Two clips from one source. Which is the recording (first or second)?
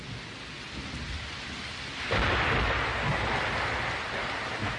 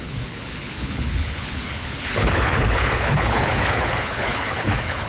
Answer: first